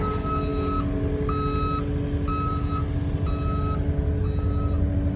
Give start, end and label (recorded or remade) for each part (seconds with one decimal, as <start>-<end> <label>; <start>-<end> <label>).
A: 0.0-5.2 recorded